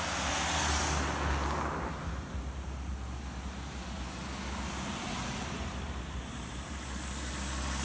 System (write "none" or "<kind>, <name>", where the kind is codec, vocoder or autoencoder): none